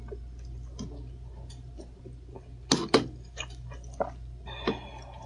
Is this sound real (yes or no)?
yes